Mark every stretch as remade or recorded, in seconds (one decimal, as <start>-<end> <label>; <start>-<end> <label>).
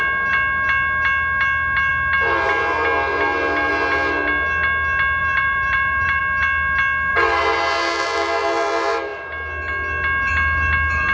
0.0-5.2 recorded; 5.2-6.2 remade; 6.2-7.1 recorded; 7.1-7.6 remade; 7.6-11.1 recorded